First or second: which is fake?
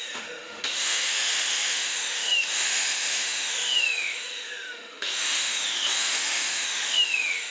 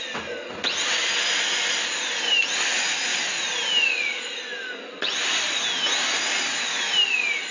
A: first